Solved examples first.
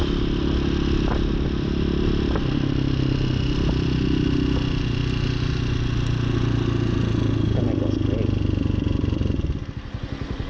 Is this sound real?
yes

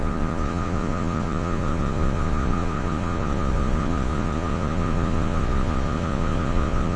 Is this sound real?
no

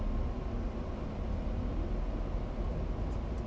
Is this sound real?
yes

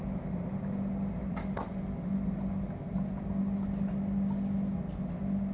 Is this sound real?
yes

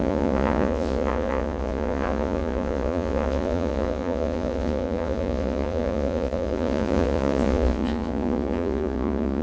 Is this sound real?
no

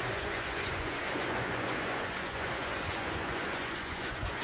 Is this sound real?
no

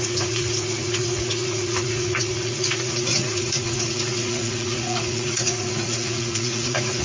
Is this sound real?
no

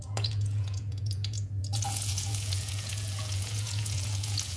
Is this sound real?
no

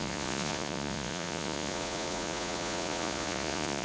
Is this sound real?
no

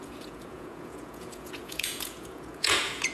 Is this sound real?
no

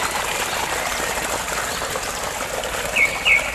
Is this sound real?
yes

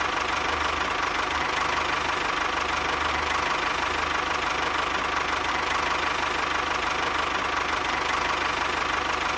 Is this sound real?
yes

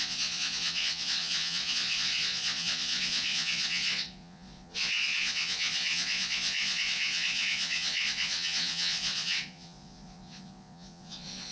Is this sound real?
no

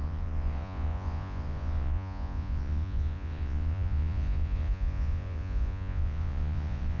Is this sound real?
no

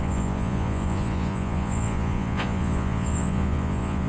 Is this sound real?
no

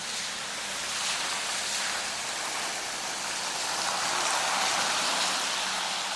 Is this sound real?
yes